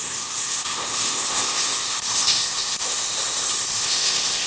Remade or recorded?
remade